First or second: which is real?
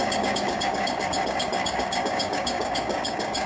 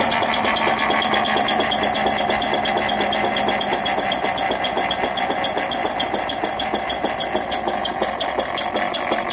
second